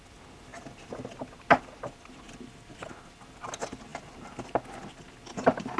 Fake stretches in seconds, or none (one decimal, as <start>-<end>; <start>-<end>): none